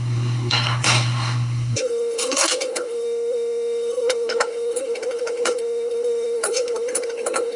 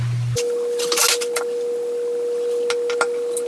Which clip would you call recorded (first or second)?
second